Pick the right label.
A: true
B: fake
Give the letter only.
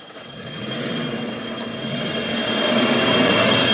B